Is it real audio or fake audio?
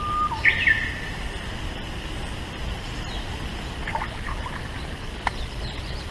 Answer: real